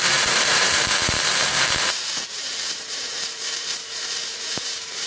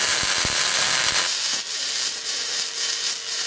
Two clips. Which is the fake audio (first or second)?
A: first